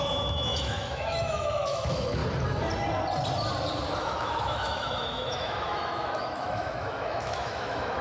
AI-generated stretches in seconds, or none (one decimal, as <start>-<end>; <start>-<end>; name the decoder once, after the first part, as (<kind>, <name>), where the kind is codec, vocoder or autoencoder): 0.0-2.2 (autoencoder, DAC-VAE); 4.0-8.0